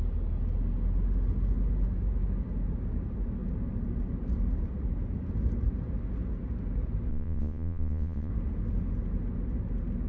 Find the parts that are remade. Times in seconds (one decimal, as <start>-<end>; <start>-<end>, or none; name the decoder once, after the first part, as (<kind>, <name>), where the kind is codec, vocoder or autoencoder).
7.1-8.3 (vocoder, Vocos)